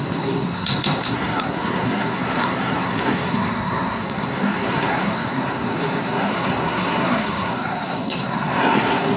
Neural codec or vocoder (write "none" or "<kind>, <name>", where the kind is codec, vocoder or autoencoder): codec, SNAC